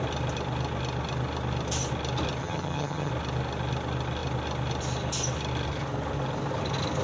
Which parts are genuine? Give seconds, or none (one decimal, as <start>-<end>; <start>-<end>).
0.0-2.4; 3.1-7.0

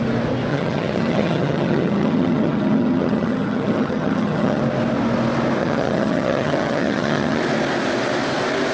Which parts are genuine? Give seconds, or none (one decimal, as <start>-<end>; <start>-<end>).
0.0-0.5; 4.6-5.6; 7.4-8.7

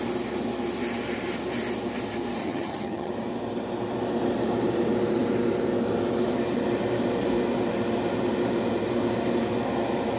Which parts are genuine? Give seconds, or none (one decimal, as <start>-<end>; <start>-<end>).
0.0-2.4; 3.1-10.2

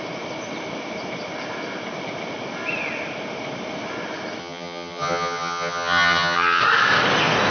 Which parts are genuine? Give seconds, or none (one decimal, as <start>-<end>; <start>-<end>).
0.0-4.4; 6.6-7.5

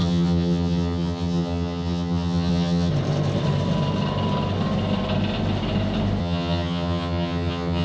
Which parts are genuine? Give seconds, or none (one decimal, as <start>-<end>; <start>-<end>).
2.9-6.2

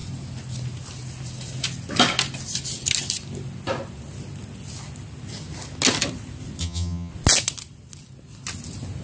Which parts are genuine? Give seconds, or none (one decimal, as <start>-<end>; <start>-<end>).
0.0-6.6; 7.1-9.0